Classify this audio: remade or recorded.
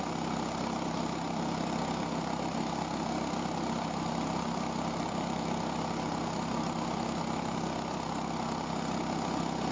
recorded